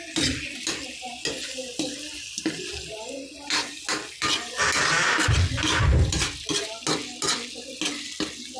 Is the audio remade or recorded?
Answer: recorded